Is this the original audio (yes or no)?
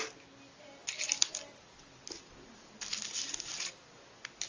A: yes